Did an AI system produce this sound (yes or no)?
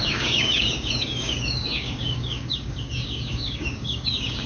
yes